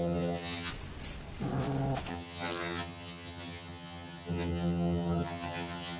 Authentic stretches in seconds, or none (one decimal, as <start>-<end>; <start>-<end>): 0.7-2.1

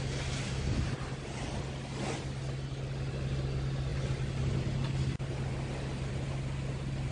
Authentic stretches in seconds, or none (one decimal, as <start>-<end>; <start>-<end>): 0.0-7.1

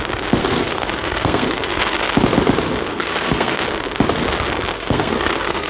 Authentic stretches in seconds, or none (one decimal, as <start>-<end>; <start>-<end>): 0.0-0.4; 2.1-2.9; 3.6-4.7

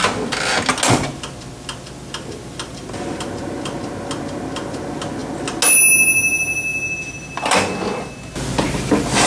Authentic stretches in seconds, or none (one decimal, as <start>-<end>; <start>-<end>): 0.0-9.3

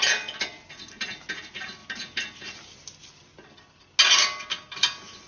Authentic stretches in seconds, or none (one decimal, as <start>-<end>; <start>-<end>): 0.0-5.3

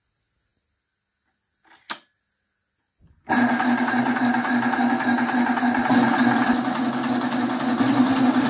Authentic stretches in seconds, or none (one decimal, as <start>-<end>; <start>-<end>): 0.0-8.5